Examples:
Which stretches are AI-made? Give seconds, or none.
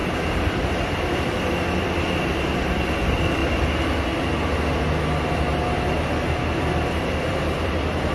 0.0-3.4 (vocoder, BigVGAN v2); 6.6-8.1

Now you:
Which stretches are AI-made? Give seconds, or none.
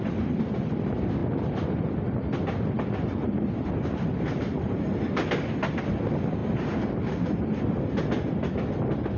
none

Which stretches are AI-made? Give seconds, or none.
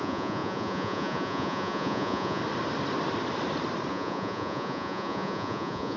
0.0-2.4 (vocoder, Vocos); 3.9-6.0